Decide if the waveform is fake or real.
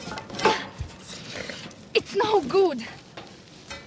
real